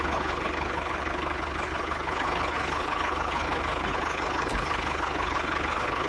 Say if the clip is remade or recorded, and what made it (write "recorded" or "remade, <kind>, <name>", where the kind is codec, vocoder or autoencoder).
remade, codec, HILCodec